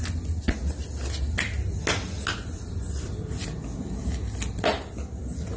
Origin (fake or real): real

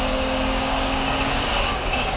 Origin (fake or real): fake